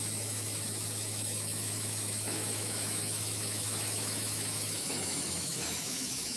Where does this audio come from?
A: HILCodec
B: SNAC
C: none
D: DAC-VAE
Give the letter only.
D